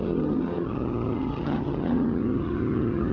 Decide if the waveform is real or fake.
fake